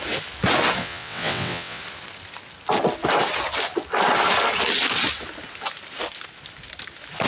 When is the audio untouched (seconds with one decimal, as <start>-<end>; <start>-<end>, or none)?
0.0-0.8; 1.8-7.3